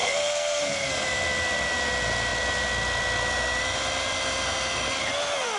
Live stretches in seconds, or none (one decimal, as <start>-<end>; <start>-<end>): 0.9-5.6